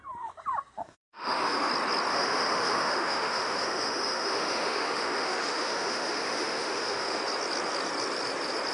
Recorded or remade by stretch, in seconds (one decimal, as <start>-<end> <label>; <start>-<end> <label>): 0.0-0.8 recorded; 0.8-1.7 remade; 1.7-2.1 recorded; 2.1-7.2 remade; 7.2-8.7 recorded